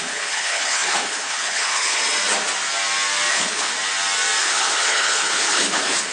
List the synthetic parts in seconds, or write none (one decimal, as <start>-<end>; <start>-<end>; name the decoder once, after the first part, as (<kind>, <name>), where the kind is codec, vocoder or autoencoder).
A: 0.0-2.0 (codec, HILCodec); 3.3-3.7; 4.4-6.1